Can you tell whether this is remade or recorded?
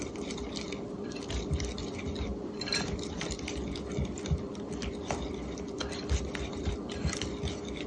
remade